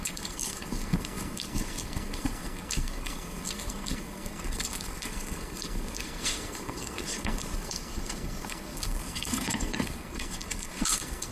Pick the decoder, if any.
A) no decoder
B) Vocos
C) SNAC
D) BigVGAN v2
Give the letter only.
C